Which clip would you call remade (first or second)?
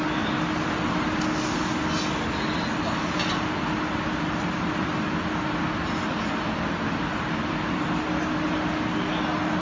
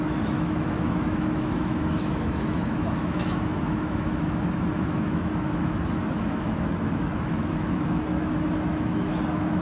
second